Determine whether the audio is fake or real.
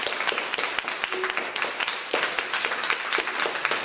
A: real